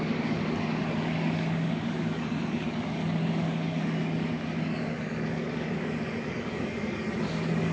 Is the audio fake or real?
fake